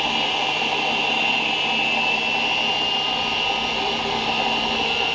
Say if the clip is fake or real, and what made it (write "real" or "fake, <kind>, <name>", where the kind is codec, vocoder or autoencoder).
real